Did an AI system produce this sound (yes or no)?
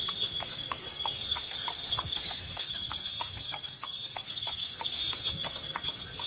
yes